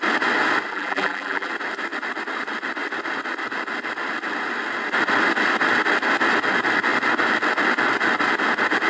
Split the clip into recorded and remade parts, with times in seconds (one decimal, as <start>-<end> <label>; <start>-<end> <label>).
0.0-0.7 recorded; 0.7-1.5 remade; 1.5-8.9 recorded